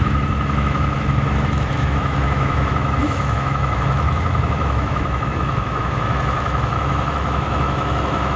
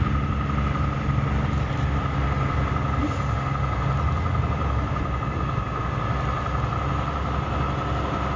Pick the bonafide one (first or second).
second